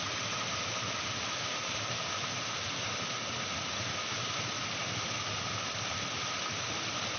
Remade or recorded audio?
recorded